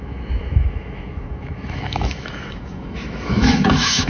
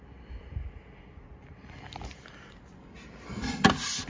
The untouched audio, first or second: second